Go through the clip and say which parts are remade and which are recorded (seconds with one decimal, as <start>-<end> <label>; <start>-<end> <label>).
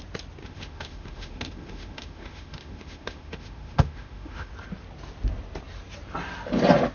0.0-0.4 recorded; 0.4-4.5 remade; 4.5-6.9 recorded